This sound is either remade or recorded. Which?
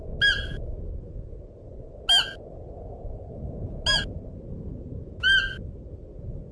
recorded